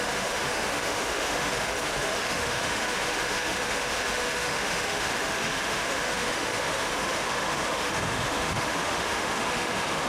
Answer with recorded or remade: remade